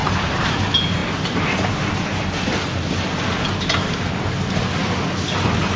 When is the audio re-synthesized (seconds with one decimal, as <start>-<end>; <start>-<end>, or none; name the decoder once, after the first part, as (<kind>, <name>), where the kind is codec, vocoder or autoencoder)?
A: 0.0-0.6 (vocoder, BigVGAN v2); 1.0-1.7